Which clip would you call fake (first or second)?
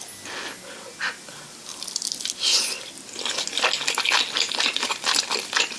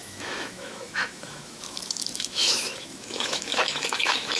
second